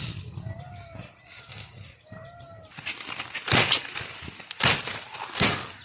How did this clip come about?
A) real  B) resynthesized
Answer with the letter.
A